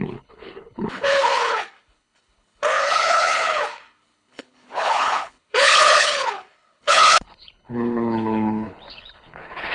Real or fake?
fake